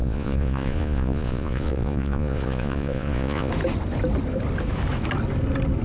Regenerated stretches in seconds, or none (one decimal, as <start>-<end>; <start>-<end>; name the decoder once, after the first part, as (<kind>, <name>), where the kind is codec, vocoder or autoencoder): 0.0-3.5 (vocoder, Vocos)